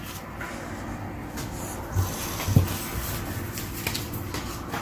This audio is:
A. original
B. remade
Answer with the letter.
A